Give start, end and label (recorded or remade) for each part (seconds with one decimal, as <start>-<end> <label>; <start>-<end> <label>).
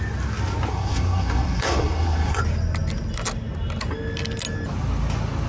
0.0-0.7 recorded; 0.7-2.4 remade; 2.4-5.5 recorded